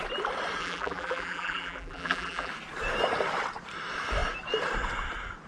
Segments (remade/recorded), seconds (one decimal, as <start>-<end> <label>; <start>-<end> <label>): 0.0-0.6 recorded; 0.6-2.5 remade; 2.5-5.5 recorded